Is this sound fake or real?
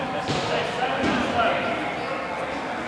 real